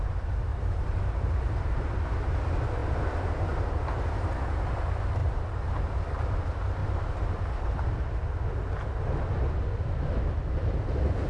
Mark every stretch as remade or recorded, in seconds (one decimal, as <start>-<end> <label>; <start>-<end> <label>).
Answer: 0.0-0.5 recorded; 0.5-2.4 remade; 2.4-2.8 recorded; 2.8-4.4 remade; 4.4-5.2 recorded; 5.2-5.7 remade; 5.7-6.8 recorded; 6.8-7.4 remade; 7.4-11.3 recorded